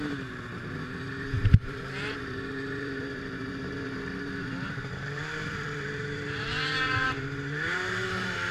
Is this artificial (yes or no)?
yes